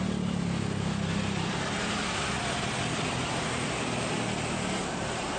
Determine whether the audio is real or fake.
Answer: real